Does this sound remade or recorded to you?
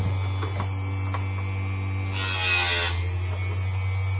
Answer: recorded